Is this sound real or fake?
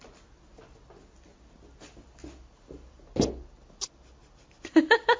real